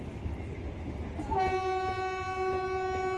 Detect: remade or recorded recorded